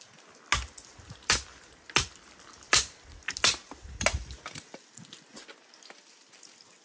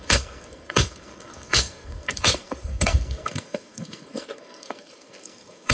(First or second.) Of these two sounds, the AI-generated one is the second